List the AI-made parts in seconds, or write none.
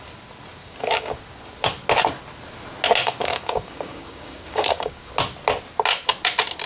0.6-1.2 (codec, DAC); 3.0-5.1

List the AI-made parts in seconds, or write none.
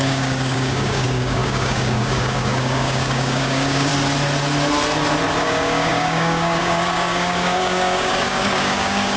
0.0-3.9 (codec, DAC); 5.4-9.2